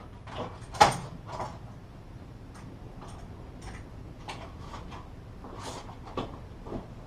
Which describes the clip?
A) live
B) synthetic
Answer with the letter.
A